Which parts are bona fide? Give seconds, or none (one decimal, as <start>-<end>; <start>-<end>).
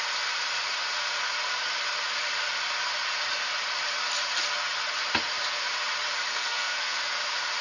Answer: 0.0-6.3; 7.0-7.6